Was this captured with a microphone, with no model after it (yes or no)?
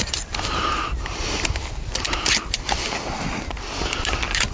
yes